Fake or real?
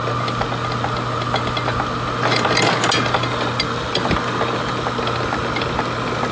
real